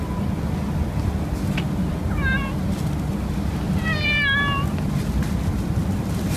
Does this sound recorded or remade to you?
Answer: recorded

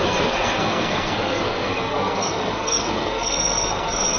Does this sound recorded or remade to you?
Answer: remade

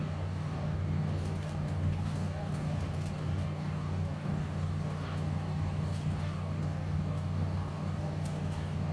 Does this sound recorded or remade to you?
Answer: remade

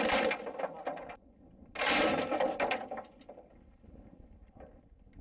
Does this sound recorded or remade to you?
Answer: recorded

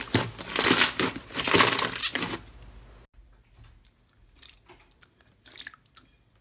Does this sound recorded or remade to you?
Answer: recorded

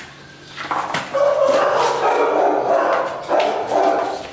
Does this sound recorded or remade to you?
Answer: recorded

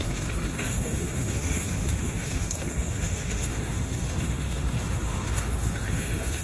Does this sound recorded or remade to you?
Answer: remade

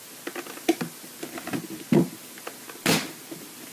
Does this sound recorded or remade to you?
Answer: recorded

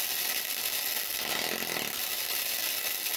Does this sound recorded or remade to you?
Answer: recorded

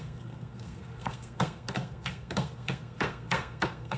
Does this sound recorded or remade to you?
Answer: remade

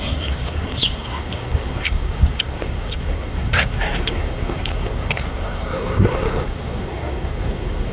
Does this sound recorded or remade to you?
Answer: remade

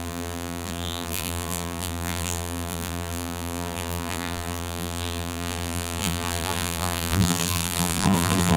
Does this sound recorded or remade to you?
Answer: remade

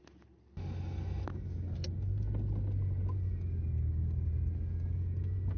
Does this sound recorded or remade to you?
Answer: recorded